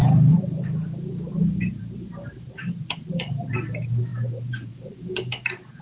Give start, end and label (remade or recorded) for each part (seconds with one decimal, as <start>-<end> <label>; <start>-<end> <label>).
0.0-3.5 remade; 3.5-4.1 recorded; 4.1-4.7 remade; 4.7-5.8 recorded